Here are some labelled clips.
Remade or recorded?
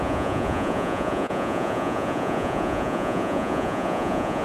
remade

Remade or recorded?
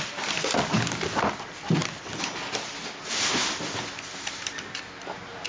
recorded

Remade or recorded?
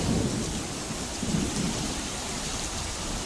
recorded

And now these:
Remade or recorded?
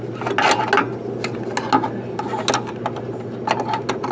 recorded